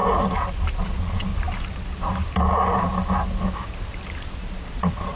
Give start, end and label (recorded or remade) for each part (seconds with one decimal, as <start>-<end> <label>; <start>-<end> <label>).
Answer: 0.0-0.8 recorded; 0.8-1.3 remade; 1.3-4.4 recorded; 4.4-5.2 remade